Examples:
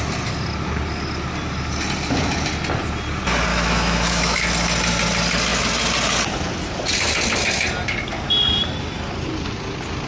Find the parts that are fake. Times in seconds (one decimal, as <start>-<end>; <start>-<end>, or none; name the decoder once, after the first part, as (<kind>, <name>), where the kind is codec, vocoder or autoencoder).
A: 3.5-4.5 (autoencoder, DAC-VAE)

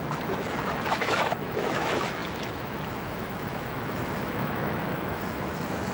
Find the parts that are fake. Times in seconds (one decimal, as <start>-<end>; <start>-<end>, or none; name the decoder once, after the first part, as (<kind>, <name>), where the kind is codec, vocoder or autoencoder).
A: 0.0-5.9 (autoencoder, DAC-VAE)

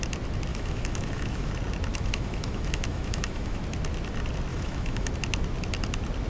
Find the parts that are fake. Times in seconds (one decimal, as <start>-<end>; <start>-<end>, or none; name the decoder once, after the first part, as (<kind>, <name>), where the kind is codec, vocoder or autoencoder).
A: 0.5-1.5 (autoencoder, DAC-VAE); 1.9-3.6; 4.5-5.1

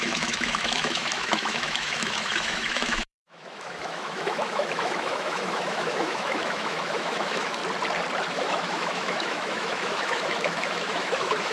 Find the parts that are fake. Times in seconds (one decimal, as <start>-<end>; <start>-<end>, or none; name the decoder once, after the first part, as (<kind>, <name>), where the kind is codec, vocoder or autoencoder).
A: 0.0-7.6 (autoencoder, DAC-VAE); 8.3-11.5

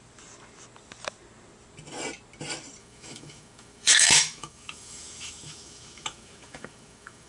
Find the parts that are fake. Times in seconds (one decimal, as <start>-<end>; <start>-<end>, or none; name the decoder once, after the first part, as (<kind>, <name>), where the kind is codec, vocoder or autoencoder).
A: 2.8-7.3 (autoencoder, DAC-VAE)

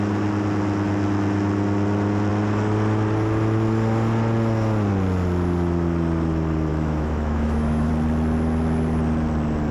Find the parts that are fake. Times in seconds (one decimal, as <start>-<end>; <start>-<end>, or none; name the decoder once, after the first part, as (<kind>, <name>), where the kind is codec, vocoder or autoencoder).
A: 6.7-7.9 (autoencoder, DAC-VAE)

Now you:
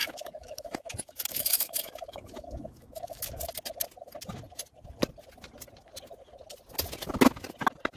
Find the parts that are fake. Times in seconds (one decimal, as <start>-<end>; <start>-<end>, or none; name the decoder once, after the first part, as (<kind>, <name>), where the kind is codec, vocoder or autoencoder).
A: 0.0-3.3 (autoencoder, DAC-VAE)